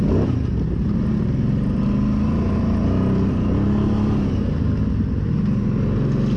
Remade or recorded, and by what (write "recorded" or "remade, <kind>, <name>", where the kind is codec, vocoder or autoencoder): recorded